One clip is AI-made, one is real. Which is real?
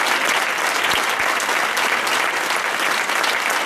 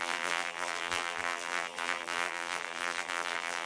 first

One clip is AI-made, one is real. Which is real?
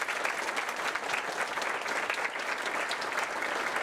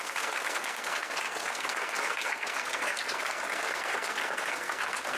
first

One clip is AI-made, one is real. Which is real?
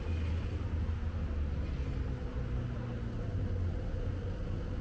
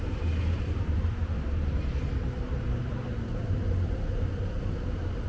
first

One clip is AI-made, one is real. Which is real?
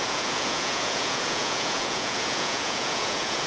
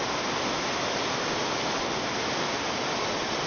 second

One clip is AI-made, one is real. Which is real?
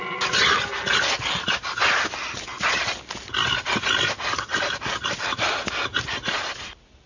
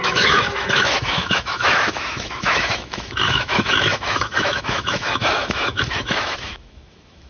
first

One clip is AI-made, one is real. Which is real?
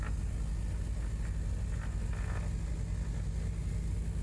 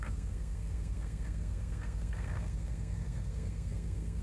first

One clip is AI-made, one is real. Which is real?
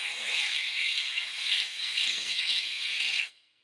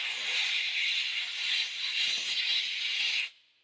second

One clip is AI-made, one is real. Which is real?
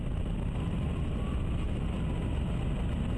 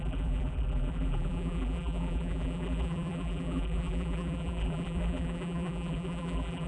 first